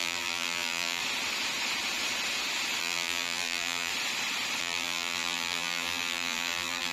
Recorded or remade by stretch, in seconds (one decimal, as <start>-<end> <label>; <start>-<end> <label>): 0.0-1.0 remade; 1.0-2.8 recorded; 2.8-3.9 remade; 3.9-4.6 recorded; 4.6-6.9 remade